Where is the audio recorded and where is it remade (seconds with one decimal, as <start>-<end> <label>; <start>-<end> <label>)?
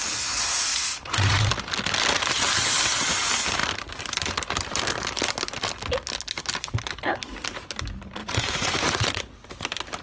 0.0-0.7 recorded; 0.7-1.5 remade; 1.5-8.2 recorded; 8.2-9.2 remade; 9.2-10.0 recorded